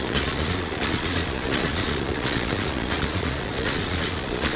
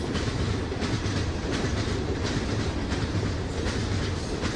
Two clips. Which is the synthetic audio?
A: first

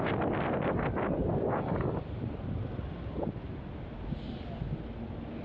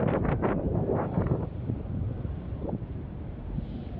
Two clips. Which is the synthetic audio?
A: second